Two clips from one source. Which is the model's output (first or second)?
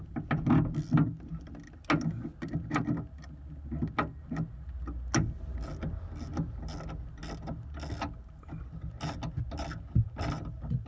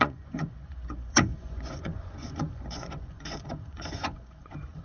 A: second